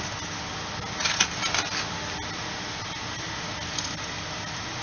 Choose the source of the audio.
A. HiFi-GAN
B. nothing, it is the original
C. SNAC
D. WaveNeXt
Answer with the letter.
B